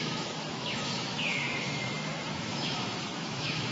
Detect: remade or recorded remade